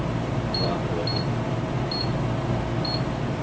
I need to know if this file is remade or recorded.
recorded